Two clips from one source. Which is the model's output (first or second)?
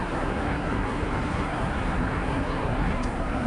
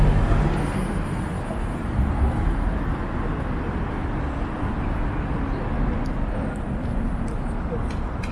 first